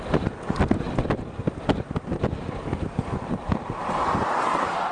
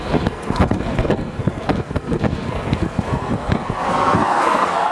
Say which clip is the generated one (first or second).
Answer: second